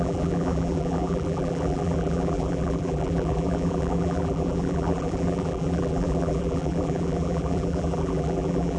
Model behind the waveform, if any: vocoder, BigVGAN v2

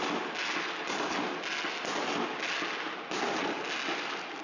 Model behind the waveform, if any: none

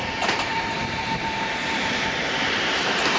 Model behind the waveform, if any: vocoder, BigVGAN v2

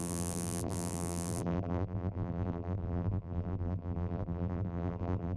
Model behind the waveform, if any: vocoder, BigVGAN v2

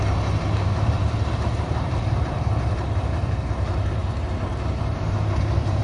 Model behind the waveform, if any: vocoder, BigVGAN v2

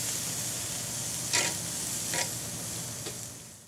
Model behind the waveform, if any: none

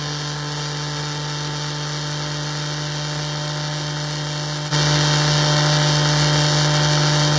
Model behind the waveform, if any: none